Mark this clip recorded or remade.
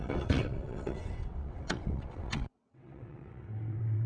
remade